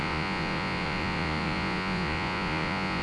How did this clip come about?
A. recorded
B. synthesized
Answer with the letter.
B